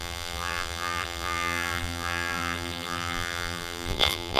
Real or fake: fake